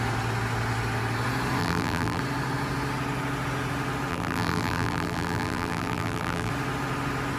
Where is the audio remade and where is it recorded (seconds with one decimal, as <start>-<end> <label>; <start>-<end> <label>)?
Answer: 0.0-1.6 recorded; 1.6-2.2 remade; 2.2-4.1 recorded; 4.1-6.5 remade; 6.5-7.4 recorded